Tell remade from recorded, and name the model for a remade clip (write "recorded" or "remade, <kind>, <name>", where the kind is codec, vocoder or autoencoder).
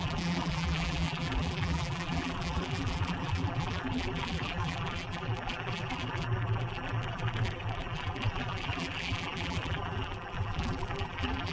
remade, vocoder, BigVGAN v2